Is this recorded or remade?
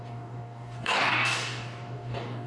remade